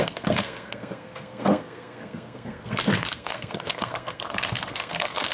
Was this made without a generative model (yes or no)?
no